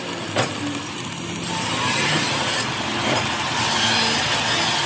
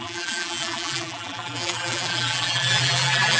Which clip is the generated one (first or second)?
second